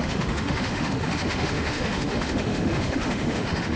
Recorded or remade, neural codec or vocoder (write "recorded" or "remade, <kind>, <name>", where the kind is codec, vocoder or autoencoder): remade, autoencoder, DAC-VAE